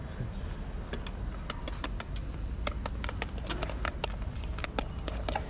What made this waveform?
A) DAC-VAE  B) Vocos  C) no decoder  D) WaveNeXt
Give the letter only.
C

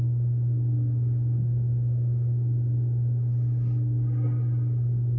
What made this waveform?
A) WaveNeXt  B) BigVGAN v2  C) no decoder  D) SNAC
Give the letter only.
C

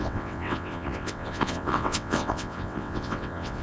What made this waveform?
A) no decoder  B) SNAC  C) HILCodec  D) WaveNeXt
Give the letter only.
D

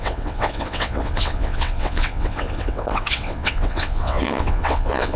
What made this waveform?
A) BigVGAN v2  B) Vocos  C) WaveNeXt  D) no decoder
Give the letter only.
C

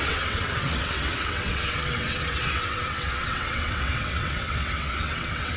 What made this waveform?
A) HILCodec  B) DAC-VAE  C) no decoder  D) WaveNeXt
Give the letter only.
D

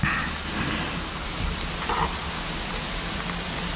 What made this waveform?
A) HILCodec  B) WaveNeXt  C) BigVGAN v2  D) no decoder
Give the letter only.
D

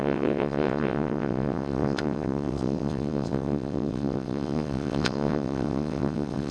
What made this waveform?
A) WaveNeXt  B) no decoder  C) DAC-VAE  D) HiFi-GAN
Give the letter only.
A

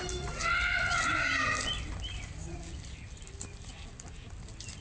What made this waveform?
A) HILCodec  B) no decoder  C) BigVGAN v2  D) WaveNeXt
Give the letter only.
B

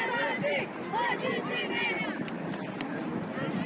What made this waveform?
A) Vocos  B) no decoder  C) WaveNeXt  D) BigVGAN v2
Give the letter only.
B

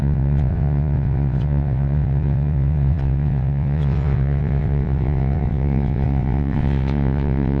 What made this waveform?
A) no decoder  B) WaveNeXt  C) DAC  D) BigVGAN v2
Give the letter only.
B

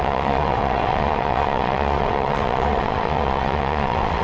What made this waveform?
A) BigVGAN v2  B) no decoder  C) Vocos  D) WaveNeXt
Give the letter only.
D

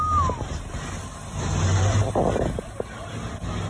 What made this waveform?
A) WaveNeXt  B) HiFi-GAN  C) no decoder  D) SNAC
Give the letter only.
C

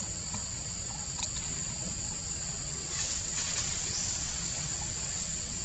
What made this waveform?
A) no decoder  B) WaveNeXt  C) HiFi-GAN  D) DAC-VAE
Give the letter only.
B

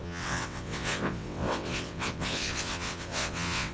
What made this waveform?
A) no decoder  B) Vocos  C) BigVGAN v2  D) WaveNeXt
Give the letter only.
D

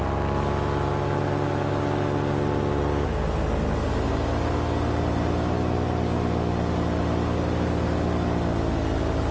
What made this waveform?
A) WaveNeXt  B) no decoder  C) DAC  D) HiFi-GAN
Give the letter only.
B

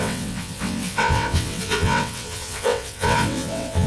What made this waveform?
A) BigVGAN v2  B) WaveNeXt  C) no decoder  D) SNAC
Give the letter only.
B